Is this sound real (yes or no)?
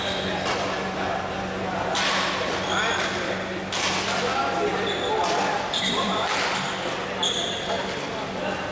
yes